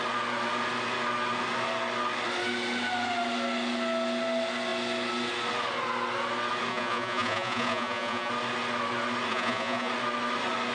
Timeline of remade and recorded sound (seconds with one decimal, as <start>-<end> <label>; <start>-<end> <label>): 0.0-6.7 recorded; 6.7-8.3 remade; 8.3-9.3 recorded; 9.3-9.9 remade; 9.9-10.7 recorded